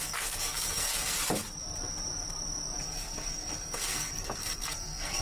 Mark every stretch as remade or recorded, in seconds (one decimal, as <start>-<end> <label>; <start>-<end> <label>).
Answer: 0.0-1.2 remade; 1.2-2.8 recorded; 2.8-5.2 remade